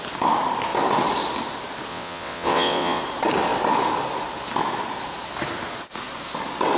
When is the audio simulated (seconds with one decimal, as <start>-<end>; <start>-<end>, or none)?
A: 1.9-3.0